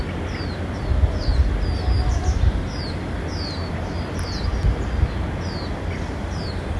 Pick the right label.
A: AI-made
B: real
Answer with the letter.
B